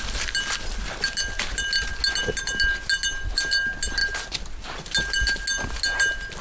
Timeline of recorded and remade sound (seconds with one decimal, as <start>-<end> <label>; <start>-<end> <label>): 0.0-6.4 recorded